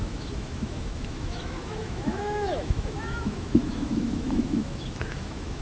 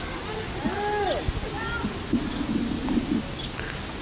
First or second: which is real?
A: second